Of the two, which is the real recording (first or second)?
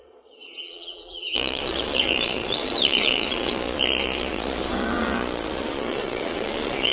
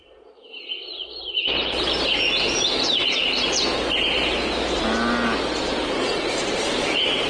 second